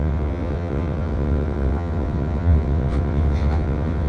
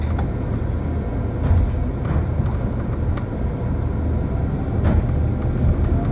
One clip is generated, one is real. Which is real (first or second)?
second